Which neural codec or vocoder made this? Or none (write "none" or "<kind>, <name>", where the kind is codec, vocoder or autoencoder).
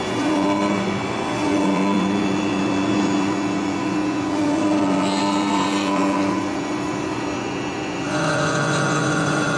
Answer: vocoder, Vocos